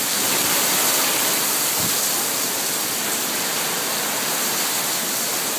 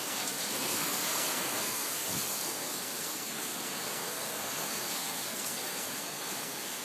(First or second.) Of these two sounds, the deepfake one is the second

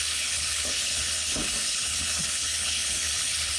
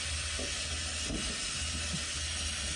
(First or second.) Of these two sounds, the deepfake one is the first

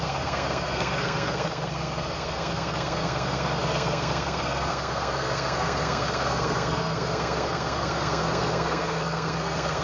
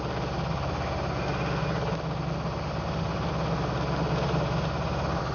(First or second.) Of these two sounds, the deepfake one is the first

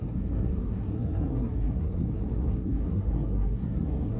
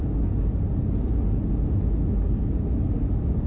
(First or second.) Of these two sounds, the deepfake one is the first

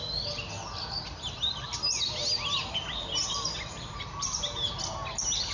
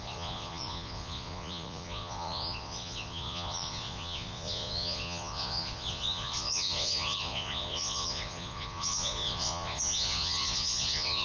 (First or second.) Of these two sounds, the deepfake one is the second